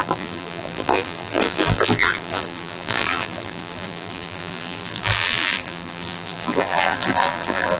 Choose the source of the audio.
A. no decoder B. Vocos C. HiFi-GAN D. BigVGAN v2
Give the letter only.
D